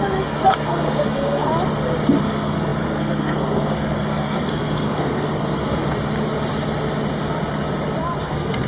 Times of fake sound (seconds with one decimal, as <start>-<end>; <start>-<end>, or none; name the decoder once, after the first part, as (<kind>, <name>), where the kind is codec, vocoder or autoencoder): 0.0-1.5 (codec, SNAC); 2.2-5.8; 8.2-8.7